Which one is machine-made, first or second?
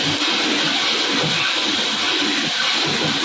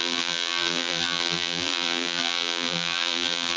second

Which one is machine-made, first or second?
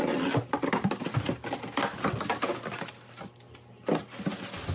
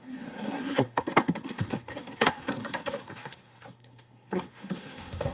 second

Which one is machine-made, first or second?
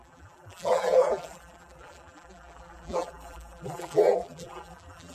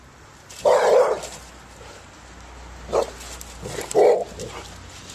first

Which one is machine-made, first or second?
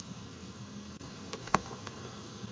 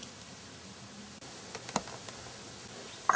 first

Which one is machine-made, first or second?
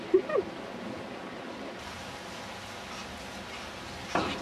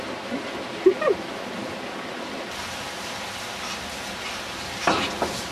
second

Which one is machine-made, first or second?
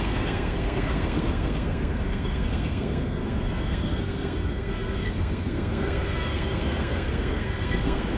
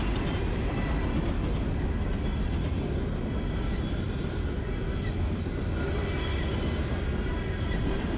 first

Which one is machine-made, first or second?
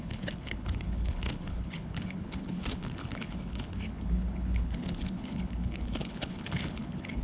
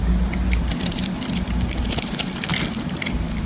first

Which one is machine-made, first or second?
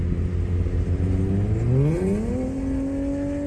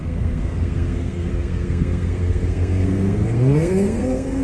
second